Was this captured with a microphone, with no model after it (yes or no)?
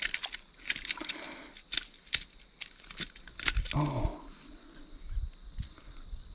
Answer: yes